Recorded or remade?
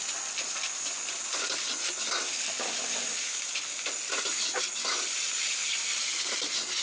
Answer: recorded